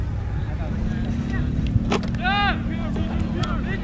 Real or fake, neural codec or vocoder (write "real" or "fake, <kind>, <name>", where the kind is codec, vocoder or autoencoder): real